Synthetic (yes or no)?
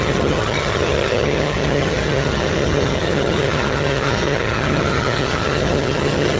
yes